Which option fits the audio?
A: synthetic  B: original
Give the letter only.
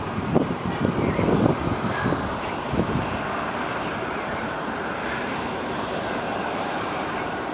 A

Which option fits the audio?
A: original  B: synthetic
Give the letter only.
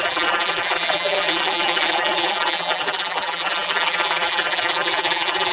B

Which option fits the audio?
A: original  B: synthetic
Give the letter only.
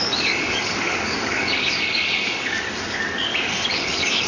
B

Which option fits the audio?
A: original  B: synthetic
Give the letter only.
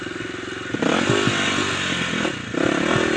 A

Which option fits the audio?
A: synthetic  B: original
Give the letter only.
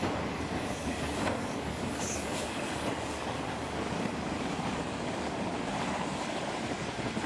A